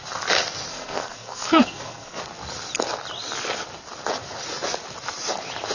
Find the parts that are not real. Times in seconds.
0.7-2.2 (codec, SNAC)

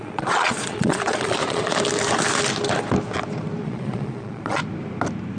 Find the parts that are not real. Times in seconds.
0.0-1.7 (vocoder, Vocos); 3.6-4.6

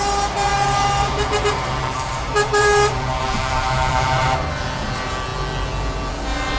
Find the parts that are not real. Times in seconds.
0.5-4.5 (vocoder, BigVGAN v2)

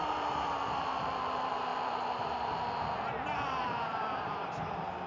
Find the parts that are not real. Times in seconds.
0.0-5.1 (vocoder, BigVGAN v2)

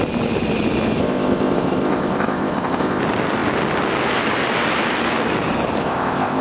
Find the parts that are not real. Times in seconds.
1.0-3.0 (codec, ZipCodec); 5.8-6.4